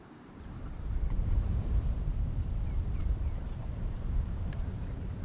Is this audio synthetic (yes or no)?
yes